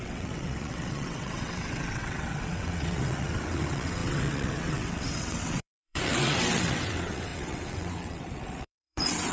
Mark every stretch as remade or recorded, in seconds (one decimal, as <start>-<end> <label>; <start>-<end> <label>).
0.0-9.3 remade